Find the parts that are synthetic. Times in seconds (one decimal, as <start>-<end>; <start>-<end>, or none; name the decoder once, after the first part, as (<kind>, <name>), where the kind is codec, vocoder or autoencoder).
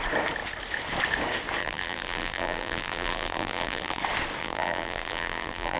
1.6-4.0 (vocoder, BigVGAN v2); 4.4-5.8